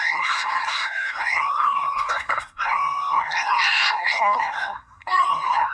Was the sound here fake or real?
fake